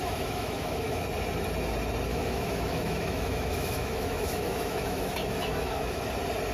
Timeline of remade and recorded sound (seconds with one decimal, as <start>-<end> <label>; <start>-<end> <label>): 0.0-1.0 remade; 1.0-2.1 recorded; 2.1-6.0 remade; 6.0-6.5 recorded

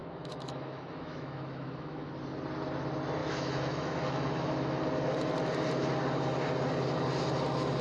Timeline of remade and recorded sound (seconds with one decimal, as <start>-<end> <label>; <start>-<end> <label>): 0.0-2.1 remade; 2.1-3.2 recorded; 3.2-4.8 remade; 4.8-7.8 recorded

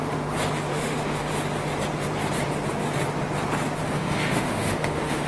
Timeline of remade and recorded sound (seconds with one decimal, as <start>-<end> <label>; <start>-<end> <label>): 0.0-0.7 recorded; 0.7-1.3 remade; 1.3-3.8 recorded; 3.8-5.3 remade

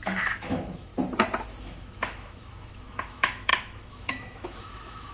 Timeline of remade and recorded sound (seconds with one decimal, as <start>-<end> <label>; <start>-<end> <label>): 0.0-0.9 remade; 0.9-1.6 recorded; 1.6-5.1 remade

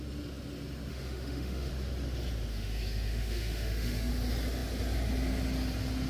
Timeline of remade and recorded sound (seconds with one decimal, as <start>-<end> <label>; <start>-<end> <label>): 0.0-0.9 recorded; 0.9-1.7 remade; 1.7-2.5 recorded; 2.5-4.1 remade; 4.1-6.1 recorded

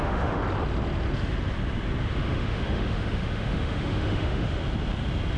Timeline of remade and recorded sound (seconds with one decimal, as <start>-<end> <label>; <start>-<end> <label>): 0.0-0.4 remade; 0.4-2.0 recorded; 2.0-4.6 remade; 4.6-5.4 recorded